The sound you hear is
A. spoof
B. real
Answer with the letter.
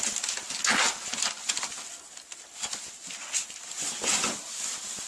B